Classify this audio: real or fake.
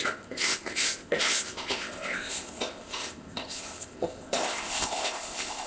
fake